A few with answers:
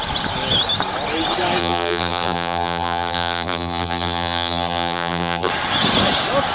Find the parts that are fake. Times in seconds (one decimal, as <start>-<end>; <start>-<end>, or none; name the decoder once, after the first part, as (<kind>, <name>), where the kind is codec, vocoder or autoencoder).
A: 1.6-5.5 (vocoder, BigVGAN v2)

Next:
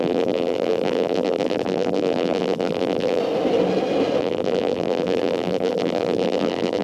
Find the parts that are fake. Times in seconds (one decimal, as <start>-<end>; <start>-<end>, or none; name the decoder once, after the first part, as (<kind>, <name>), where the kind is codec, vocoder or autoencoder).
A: 0.0-3.2 (vocoder, BigVGAN v2); 4.2-6.8

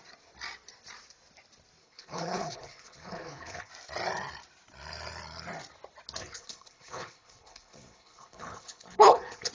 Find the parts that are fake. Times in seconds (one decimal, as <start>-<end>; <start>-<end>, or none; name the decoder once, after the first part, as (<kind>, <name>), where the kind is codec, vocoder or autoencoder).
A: 1.8-3.7 (codec, HILCodec); 6.2-9.5

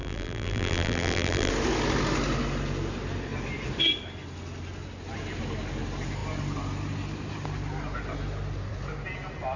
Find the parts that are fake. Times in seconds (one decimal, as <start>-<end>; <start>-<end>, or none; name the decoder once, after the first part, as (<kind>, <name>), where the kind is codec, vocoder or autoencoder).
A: 0.0-1.5 (vocoder, BigVGAN v2)

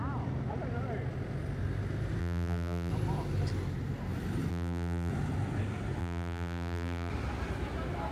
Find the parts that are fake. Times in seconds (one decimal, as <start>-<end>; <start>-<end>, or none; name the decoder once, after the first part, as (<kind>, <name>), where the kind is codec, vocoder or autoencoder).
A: 2.2-2.9 (vocoder, BigVGAN v2); 4.5-5.1; 6.0-7.1

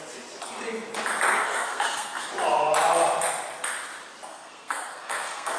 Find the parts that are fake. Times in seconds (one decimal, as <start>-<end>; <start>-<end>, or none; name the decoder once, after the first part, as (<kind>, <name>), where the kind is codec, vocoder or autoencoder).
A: 1.3-2.3 (codec, SNAC); 4.3-5.6